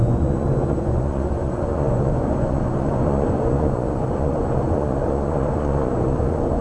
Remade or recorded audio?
remade